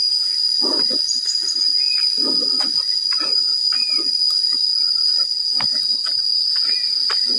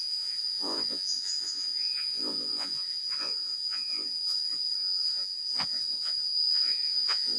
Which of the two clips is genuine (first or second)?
first